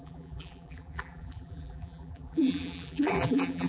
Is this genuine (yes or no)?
no